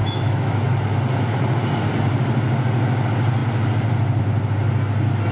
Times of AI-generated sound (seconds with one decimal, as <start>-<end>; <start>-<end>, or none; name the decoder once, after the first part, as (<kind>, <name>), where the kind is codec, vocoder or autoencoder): 0.0-0.6 (autoencoder, DAC-VAE)